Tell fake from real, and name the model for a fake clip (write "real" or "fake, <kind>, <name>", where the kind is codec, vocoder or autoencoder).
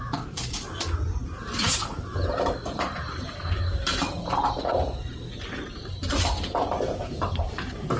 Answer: fake, vocoder, BigVGAN v2